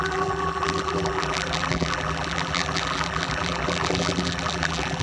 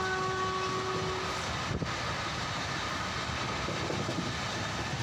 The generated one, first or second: first